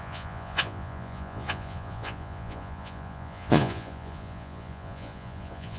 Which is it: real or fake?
fake